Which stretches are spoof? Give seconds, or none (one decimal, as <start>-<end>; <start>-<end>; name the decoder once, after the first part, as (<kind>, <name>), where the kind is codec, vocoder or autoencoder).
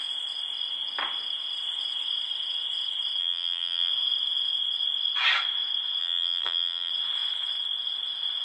3.2-3.9 (vocoder, BigVGAN v2); 6.0-6.9